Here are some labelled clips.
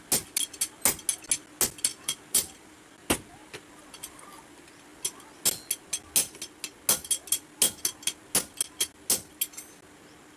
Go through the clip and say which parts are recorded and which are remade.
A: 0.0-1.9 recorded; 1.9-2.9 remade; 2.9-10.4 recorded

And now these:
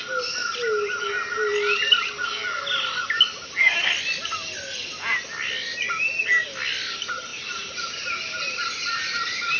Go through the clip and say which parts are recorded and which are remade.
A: 0.0-7.3 recorded; 7.3-8.4 remade; 8.4-9.6 recorded

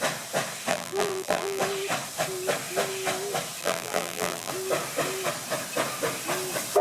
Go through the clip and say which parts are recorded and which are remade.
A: 0.0-0.7 recorded; 0.7-1.6 remade; 1.6-3.6 recorded; 3.6-4.5 remade; 4.5-6.8 recorded

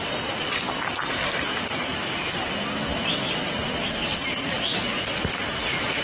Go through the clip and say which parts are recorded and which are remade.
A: 0.0-6.0 recorded

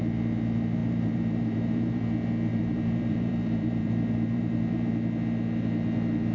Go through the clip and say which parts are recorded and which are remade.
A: 0.0-0.8 recorded; 0.8-2.0 remade; 2.0-2.5 recorded; 2.5-4.9 remade; 4.9-6.3 recorded